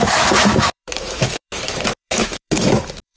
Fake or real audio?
fake